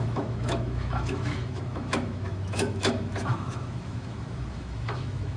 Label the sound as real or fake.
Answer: fake